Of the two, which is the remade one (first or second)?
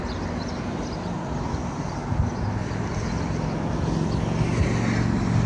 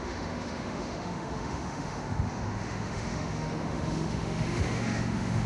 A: second